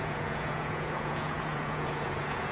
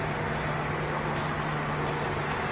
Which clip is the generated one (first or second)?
first